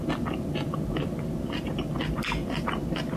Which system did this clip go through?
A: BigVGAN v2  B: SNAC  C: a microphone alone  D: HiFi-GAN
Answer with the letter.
C